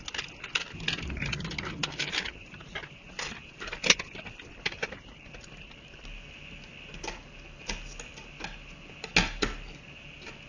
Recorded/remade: recorded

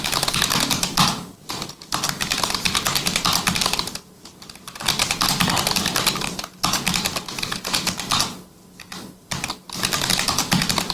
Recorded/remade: recorded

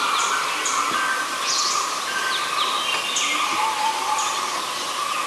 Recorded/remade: recorded